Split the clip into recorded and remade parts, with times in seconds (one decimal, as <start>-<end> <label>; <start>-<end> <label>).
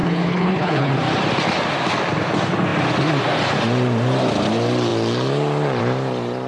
0.0-0.9 remade; 0.9-6.5 recorded